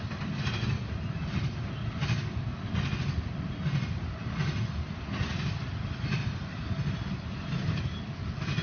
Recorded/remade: recorded